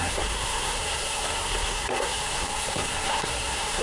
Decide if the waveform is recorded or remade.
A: remade